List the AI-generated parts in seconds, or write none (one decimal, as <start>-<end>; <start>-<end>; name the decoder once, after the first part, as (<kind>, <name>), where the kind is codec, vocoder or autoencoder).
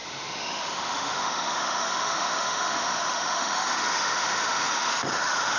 0.0-5.6 (autoencoder, DAC-VAE)